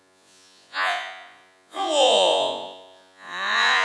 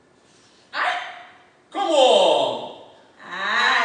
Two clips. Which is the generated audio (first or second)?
first